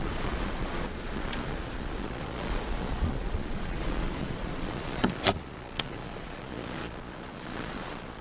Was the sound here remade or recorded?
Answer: remade